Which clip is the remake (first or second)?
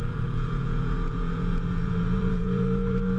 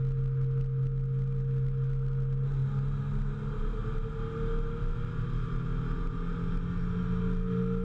first